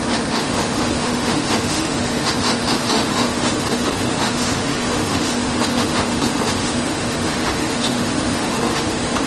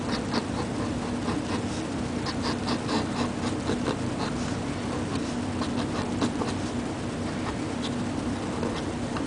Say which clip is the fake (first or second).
first